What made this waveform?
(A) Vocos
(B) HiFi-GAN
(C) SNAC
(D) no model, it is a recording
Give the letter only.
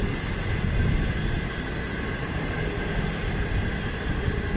D